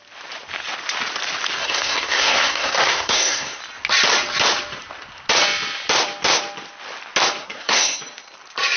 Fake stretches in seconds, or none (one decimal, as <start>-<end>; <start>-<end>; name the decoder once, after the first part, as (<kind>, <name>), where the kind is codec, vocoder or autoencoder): 1.6-3.6 (codec, SNAC); 7.4-8.0